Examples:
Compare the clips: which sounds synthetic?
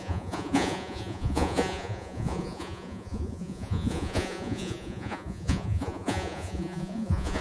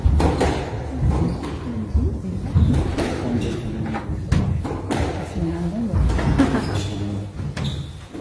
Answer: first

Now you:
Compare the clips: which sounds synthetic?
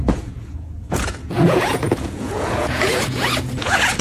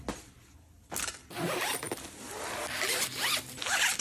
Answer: first